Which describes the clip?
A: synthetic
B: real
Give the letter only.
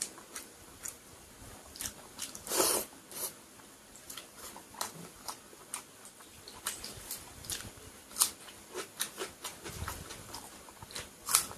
A